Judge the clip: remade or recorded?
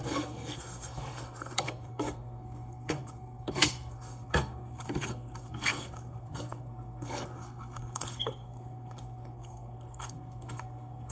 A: remade